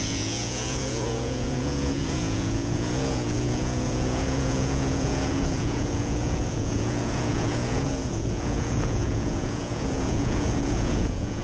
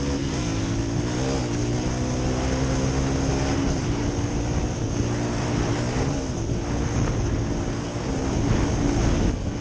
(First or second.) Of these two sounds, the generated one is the first